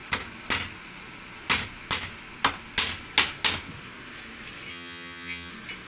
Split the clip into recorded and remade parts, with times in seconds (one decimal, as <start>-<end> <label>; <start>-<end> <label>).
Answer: 0.0-4.7 recorded; 4.7-5.5 remade; 5.5-5.9 recorded